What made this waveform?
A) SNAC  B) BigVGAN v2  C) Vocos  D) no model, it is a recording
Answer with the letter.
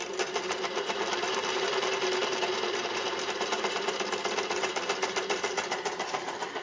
B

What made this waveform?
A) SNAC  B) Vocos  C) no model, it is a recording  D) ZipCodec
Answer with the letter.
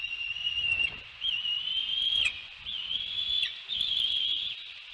B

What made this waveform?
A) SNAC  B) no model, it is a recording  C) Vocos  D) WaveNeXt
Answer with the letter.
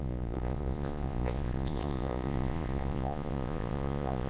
C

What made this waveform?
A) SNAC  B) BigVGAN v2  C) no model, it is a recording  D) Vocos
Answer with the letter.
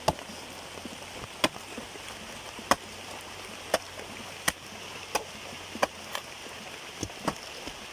C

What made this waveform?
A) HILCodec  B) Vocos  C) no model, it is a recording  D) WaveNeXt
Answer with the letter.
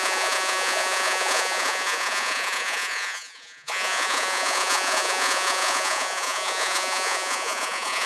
B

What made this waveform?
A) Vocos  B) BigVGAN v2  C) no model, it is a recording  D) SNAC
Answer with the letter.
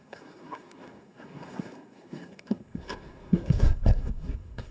D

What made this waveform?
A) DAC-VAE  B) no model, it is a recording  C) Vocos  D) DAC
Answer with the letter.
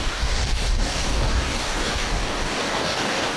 D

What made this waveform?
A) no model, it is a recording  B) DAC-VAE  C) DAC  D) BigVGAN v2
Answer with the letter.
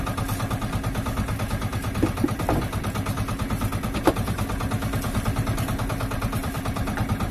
A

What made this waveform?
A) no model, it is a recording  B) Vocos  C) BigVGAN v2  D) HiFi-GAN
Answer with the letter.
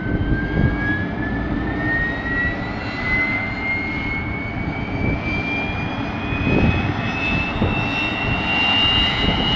A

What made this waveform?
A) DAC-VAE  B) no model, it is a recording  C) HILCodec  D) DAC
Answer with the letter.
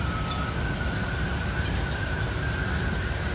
B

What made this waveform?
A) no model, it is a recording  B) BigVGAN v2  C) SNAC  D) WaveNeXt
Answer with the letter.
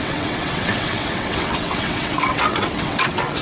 D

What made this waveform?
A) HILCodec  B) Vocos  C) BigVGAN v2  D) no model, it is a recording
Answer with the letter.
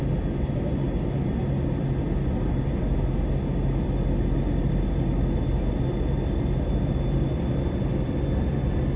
D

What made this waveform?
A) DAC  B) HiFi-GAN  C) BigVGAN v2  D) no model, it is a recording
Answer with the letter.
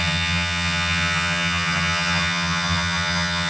B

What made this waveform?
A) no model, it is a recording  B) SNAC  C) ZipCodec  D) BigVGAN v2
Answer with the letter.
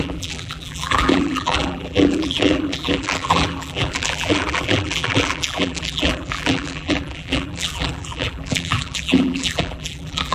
D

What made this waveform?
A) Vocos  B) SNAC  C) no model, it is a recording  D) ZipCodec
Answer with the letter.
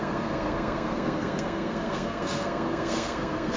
B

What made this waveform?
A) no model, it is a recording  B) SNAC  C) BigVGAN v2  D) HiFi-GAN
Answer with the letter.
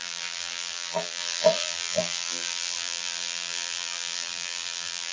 C